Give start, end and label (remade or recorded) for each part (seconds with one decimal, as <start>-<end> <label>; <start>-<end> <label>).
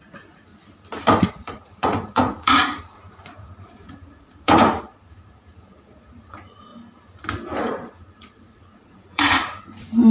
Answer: 0.0-0.5 remade; 0.5-1.2 recorded; 1.2-6.7 remade; 6.7-7.6 recorded; 7.6-10.1 remade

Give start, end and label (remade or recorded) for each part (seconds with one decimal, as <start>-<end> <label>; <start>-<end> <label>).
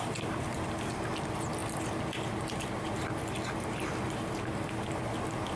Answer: 0.0-5.6 recorded